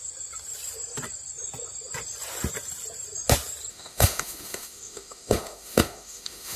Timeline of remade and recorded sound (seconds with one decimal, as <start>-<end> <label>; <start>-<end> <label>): 0.0-3.7 recorded; 3.7-6.6 remade